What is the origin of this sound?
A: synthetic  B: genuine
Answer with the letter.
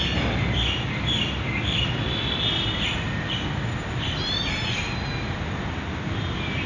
B